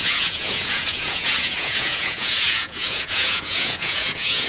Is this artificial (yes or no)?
yes